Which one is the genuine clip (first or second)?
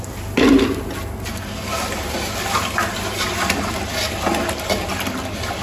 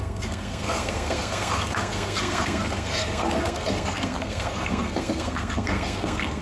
first